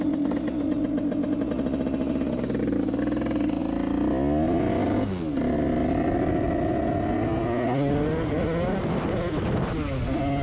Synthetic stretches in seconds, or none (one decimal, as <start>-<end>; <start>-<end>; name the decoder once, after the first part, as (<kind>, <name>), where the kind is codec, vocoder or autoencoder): none